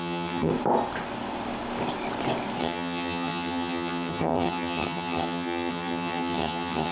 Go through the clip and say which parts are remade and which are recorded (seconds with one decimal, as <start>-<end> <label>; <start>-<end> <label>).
0.0-0.5 remade; 0.5-2.6 recorded; 2.6-6.9 remade